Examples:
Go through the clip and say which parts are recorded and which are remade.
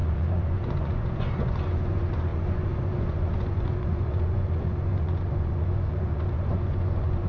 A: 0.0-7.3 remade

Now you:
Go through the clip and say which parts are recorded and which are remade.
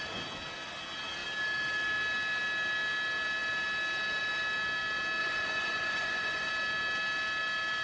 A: 0.0-5.2 recorded; 5.2-6.5 remade; 6.5-7.8 recorded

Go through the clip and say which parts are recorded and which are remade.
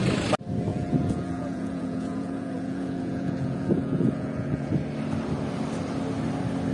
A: 0.0-0.7 recorded; 0.7-4.7 remade; 4.7-6.7 recorded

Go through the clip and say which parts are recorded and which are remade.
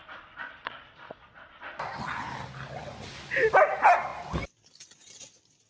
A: 0.0-1.6 remade; 1.6-5.7 recorded